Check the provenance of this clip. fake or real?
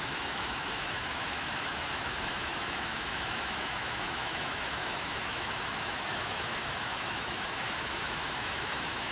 fake